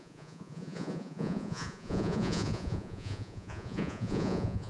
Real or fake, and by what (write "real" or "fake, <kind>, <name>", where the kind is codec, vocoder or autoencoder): fake, vocoder, Vocos